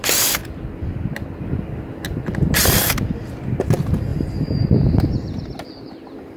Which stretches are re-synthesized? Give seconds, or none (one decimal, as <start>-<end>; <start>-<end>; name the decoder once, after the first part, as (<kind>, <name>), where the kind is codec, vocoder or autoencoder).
4.1-5.4 (vocoder, BigVGAN v2)